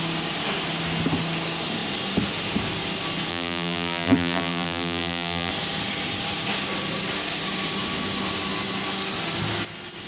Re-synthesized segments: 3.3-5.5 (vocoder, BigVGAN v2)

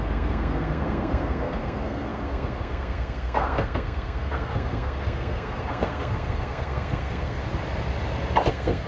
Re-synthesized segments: 0.0-7.4 (codec, SNAC); 8.5-8.9

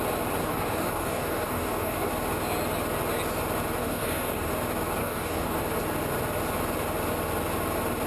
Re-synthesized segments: 0.4-2.1 (codec, DAC); 3.8-4.5; 5.0-5.6

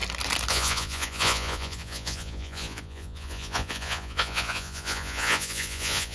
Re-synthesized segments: 0.5-6.1 (vocoder, Vocos)

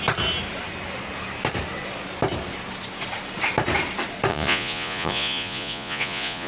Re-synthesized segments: 4.3-6.5 (vocoder, Vocos)

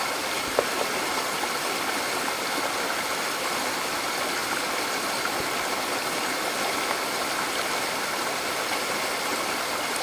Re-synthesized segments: none

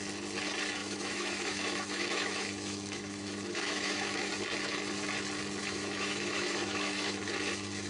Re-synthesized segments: 0.8-4.3 (autoencoder, DAC-VAE); 5.6-7.2

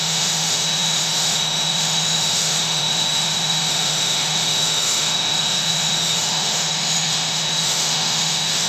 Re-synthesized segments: 0.0-8.7 (autoencoder, DAC-VAE)